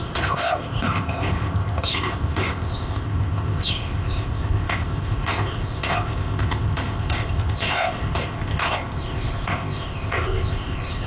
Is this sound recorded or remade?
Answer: remade